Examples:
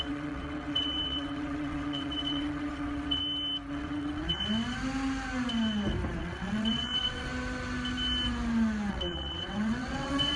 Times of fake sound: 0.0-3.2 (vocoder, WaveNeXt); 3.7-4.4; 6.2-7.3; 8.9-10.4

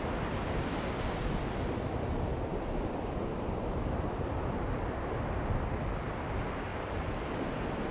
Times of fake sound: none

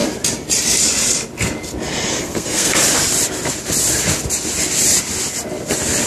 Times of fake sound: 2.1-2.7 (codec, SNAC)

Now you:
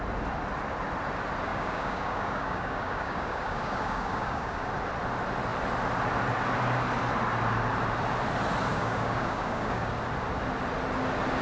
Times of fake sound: 1.5-4.7 (codec, DAC); 8.7-9.9

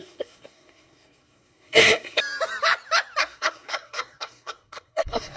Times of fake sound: 0.0-2.2 (codec, SNAC); 3.2-5.4